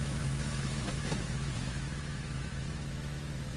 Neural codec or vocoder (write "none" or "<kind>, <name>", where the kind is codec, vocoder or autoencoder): autoencoder, DAC-VAE